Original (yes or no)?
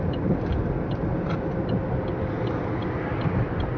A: yes